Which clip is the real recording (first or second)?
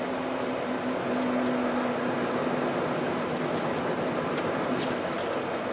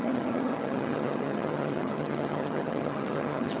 first